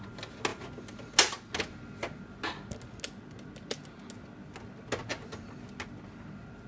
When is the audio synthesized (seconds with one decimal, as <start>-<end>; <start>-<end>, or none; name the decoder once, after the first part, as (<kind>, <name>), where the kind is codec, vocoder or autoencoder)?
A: none

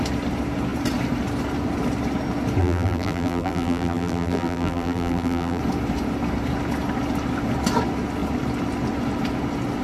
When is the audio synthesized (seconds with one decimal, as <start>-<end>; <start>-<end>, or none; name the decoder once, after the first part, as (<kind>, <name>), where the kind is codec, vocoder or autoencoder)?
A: 2.6-5.6 (vocoder, BigVGAN v2)

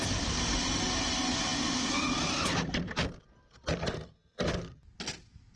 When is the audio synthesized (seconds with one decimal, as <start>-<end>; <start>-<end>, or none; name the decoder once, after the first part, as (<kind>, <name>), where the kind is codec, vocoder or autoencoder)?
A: none

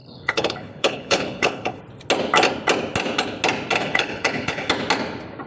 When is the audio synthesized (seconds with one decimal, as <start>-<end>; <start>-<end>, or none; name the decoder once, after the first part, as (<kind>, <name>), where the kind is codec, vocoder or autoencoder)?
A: 0.0-1.8 (codec, HILCodec); 3.7-4.7

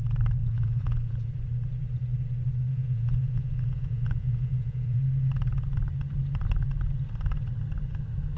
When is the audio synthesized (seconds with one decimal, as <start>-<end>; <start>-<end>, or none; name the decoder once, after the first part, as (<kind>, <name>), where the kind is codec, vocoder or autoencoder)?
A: 0.4-1.3 (vocoder, Vocos); 2.7-5.0

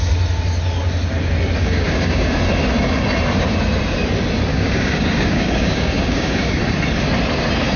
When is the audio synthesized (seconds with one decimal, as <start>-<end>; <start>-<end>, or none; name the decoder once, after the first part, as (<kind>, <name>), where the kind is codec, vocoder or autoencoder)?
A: 1.6-2.4 (codec, DAC); 4.5-6.6